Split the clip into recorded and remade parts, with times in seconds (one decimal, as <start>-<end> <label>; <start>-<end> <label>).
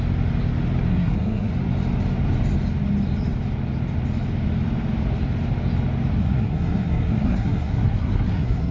0.0-0.9 recorded; 0.9-1.5 remade; 1.5-6.2 recorded; 6.2-8.7 remade